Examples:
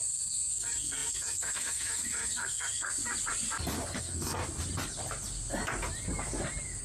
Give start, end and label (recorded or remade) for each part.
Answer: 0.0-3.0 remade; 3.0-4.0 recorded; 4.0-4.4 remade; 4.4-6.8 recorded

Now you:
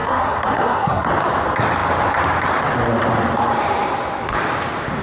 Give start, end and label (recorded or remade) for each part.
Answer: 0.0-1.1 remade; 1.1-5.0 recorded

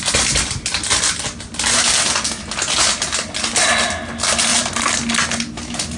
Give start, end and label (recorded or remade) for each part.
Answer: 0.0-6.0 recorded